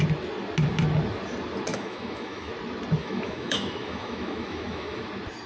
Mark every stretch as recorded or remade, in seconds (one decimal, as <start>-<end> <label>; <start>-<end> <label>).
0.0-1.7 recorded; 1.7-2.5 remade; 2.5-3.0 recorded; 3.0-5.1 remade; 5.1-5.5 recorded